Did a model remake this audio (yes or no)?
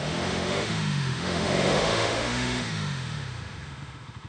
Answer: yes